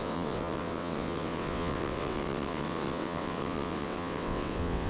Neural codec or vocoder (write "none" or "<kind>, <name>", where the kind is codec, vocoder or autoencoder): vocoder, WaveNeXt